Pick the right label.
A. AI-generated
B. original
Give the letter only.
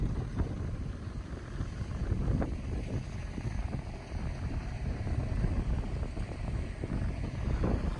B